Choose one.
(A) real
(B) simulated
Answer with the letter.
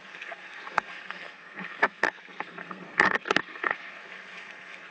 B